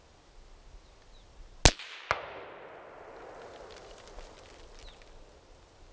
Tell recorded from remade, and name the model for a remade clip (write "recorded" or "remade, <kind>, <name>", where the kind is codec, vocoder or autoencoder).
recorded